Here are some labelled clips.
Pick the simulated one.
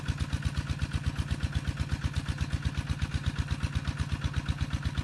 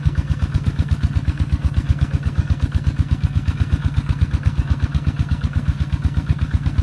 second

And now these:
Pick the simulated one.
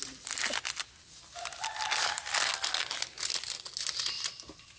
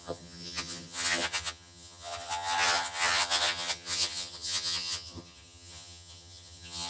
second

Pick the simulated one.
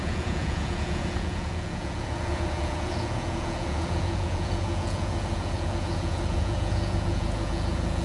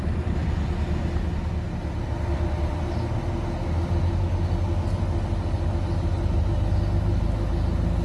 first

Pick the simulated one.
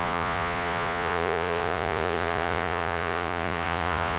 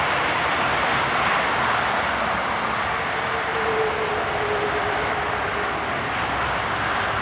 first